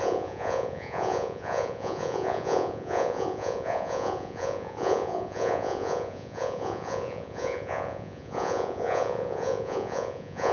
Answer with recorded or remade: remade